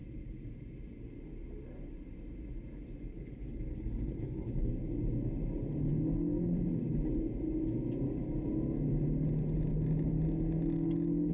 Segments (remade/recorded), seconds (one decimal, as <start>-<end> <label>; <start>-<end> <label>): 0.0-3.1 recorded; 3.1-4.7 remade; 4.7-11.3 recorded